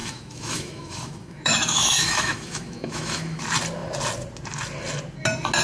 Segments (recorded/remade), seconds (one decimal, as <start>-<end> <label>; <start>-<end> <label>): 0.0-3.4 remade; 3.4-5.6 recorded